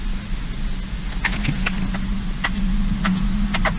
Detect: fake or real real